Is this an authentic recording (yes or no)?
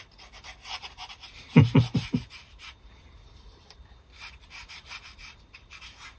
no